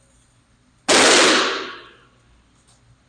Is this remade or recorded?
recorded